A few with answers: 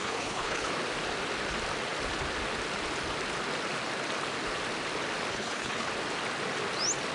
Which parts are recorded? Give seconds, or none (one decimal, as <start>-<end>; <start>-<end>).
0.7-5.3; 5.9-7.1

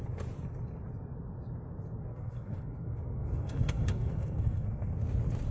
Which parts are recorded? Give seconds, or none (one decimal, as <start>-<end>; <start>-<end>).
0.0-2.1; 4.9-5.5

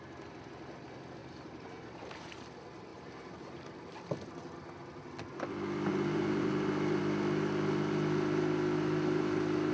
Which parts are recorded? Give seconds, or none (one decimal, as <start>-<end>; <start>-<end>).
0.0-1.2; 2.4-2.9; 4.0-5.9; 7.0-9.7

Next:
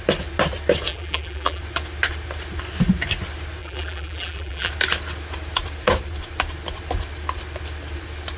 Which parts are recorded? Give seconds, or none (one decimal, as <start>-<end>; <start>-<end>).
0.0-0.9; 1.6-3.6; 4.7-8.4

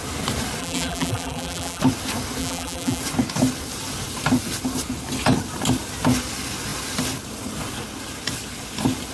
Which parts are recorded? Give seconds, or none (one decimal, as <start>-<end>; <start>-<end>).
0.0-0.6; 1.8-2.4; 3.0-9.1

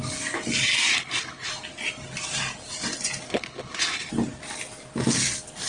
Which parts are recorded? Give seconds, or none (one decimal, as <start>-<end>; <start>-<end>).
0.0-0.9; 1.5-3.3; 4.1-5.7

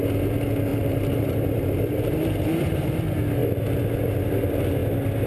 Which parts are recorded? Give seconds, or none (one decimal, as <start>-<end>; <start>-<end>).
0.0-0.7; 3.0-5.3